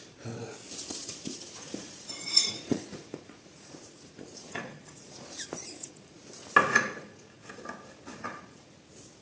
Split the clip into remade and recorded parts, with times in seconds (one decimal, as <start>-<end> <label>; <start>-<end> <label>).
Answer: 0.0-1.0 recorded; 1.0-6.2 remade; 6.2-6.7 recorded; 6.7-7.4 remade; 7.4-8.1 recorded; 8.1-8.7 remade; 8.7-9.2 recorded